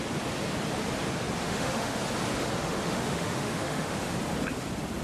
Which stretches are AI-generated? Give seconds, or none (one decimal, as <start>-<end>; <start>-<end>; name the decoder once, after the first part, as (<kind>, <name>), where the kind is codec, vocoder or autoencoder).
1.4-2.0 (autoencoder, DAC-VAE); 2.6-4.0